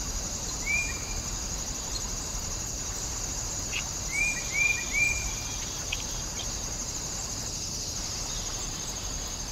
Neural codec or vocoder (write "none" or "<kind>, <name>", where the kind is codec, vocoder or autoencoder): vocoder, BigVGAN v2